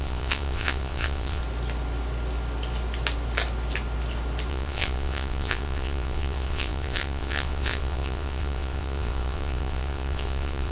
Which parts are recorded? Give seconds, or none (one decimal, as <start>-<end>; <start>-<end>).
1.4-4.5